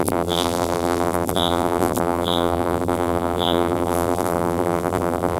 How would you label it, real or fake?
fake